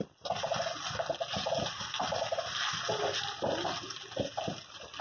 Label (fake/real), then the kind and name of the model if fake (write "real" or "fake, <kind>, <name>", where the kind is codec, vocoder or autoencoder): real